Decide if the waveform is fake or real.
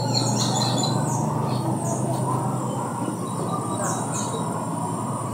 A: real